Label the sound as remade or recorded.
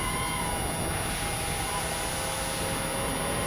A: recorded